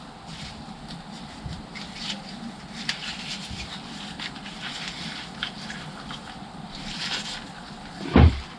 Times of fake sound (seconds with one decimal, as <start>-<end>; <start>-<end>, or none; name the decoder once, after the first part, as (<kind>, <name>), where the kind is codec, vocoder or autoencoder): none